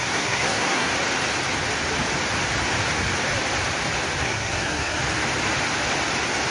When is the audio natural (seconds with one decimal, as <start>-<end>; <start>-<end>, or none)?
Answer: 0.9-4.2; 5.0-6.5